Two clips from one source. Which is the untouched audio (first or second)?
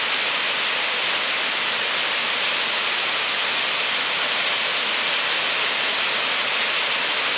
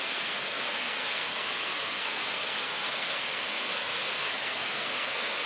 first